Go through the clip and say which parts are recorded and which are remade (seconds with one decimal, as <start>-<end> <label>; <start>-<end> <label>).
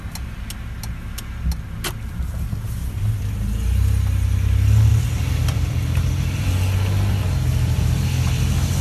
0.0-4.9 recorded; 4.9-8.8 remade